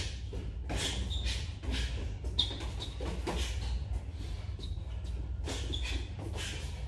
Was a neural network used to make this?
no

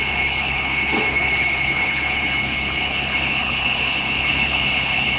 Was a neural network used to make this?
yes